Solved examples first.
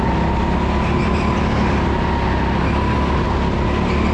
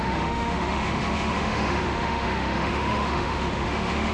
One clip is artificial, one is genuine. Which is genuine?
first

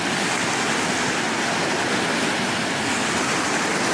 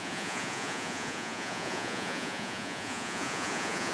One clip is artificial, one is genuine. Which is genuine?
first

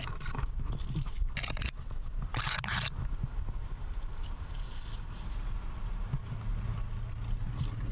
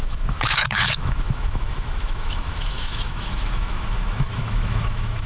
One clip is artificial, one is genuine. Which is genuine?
first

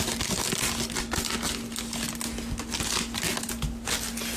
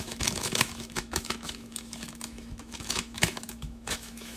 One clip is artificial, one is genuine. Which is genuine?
first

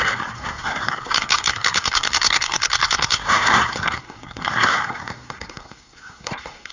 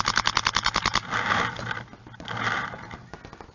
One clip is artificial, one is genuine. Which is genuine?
second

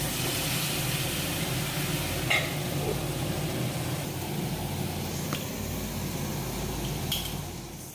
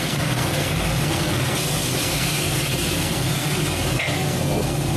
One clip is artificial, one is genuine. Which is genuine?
first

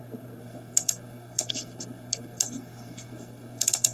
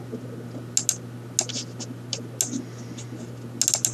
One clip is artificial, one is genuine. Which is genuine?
second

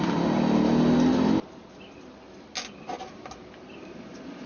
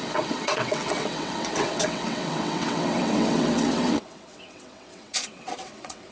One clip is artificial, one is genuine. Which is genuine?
first